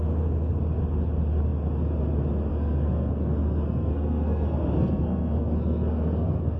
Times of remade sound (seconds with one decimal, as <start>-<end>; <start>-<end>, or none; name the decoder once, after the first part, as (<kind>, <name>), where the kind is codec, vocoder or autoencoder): 2.5-6.6 (codec, SNAC)